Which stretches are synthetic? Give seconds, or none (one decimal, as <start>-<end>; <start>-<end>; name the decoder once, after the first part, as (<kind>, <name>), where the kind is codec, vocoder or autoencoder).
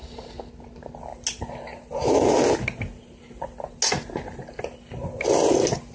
none